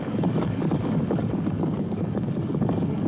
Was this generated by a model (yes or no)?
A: yes